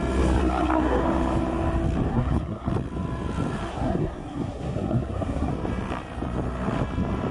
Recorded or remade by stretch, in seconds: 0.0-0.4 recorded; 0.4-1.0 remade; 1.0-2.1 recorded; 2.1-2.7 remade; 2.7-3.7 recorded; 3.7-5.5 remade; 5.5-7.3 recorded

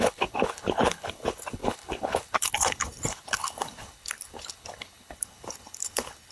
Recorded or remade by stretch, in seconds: 0.0-6.3 remade

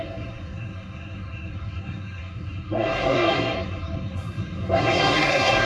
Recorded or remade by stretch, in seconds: 0.0-5.7 remade

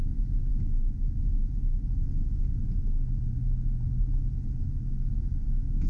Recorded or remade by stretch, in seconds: 0.0-5.9 recorded

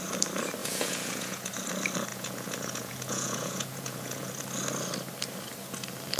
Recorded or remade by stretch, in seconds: 0.0-0.6 recorded; 0.6-1.5 remade; 1.5-2.1 recorded; 2.1-4.3 remade; 4.3-6.2 recorded